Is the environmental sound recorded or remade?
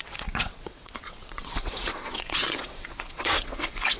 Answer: remade